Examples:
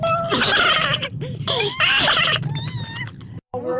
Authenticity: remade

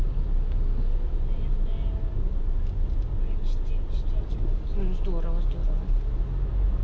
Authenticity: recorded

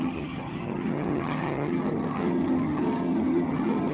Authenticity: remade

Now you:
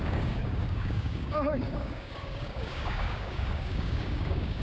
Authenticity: remade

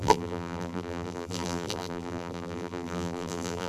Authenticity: remade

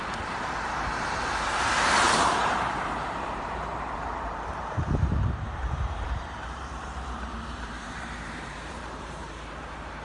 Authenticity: remade